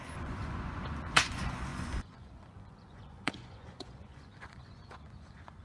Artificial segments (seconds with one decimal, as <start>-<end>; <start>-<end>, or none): 0.0-5.6